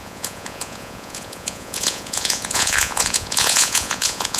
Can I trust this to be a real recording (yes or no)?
no